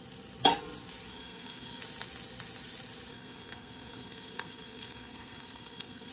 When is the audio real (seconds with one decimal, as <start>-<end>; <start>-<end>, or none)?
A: 0.0-1.1; 1.8-3.1